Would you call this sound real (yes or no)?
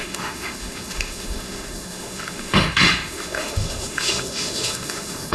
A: no